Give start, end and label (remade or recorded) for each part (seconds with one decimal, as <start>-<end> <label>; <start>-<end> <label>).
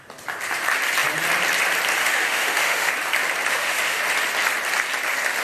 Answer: 0.0-2.0 recorded; 2.0-2.9 remade; 2.9-3.5 recorded; 3.5-4.0 remade; 4.0-5.4 recorded